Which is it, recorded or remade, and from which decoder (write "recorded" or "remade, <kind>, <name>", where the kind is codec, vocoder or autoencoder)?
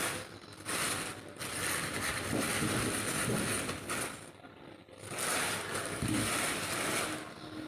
recorded